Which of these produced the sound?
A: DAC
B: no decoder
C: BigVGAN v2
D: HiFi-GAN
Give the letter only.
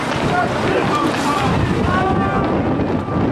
B